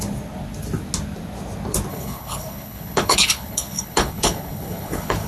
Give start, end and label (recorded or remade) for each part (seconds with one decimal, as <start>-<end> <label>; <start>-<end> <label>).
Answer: 0.0-1.9 recorded; 1.9-5.3 remade